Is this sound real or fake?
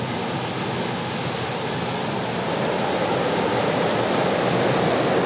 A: real